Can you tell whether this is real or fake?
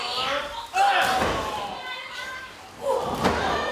real